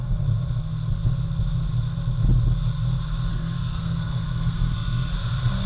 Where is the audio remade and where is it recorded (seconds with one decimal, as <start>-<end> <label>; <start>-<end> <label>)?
0.0-3.3 recorded; 3.3-5.1 remade; 5.1-5.7 recorded

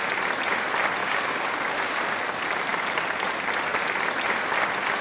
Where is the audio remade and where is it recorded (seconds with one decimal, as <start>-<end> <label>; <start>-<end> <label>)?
0.0-1.0 recorded; 1.0-2.0 remade; 2.0-5.0 recorded

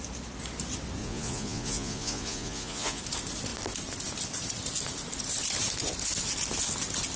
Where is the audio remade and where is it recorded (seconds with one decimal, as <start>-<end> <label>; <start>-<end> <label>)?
0.0-1.0 recorded; 1.0-3.0 remade; 3.0-7.2 recorded

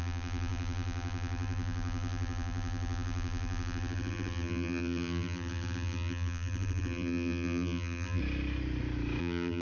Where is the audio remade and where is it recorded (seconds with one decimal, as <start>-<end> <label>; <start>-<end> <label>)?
0.0-8.2 remade; 8.2-9.2 recorded; 9.2-9.6 remade

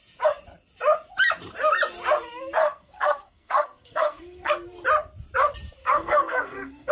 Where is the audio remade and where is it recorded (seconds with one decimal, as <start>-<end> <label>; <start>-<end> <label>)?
0.0-2.6 recorded; 2.6-4.5 remade; 4.5-5.8 recorded; 5.8-6.9 remade

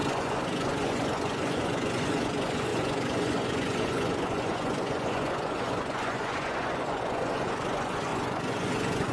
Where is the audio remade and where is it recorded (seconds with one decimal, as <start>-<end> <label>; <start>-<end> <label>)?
0.0-9.1 remade